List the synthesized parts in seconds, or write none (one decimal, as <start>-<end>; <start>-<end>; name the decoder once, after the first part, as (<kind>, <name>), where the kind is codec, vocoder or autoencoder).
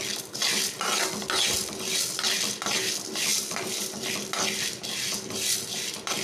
none